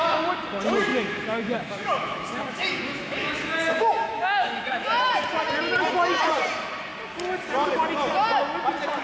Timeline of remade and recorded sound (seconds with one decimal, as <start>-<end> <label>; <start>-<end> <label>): 0.0-0.9 recorded; 0.9-5.2 remade; 5.2-9.0 recorded